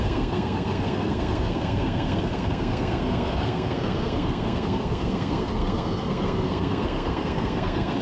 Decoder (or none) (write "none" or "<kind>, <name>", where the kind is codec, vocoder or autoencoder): codec, SNAC